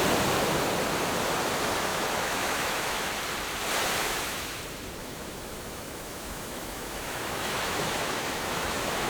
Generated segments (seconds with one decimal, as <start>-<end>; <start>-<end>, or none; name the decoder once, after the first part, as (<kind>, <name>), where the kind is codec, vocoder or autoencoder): 1.9-3.1 (autoencoder, DAC-VAE); 4.0-4.6; 5.0-9.1